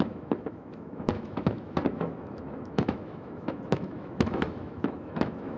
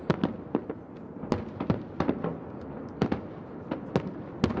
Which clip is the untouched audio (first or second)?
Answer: second